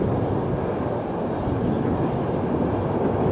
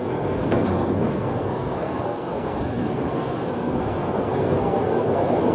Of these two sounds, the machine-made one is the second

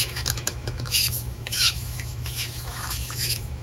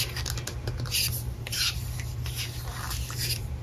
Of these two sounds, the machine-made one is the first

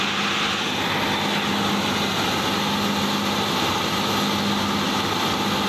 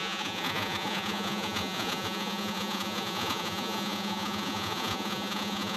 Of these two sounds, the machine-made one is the second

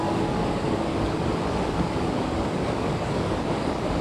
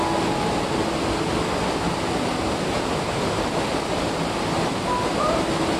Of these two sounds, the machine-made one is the first